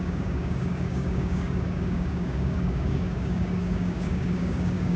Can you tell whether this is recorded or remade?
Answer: remade